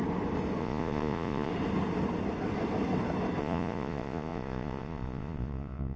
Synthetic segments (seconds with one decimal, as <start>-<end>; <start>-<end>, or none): 0.6-1.5; 3.4-6.0